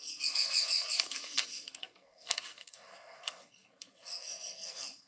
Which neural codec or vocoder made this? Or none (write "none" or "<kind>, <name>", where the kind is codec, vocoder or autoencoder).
codec, SNAC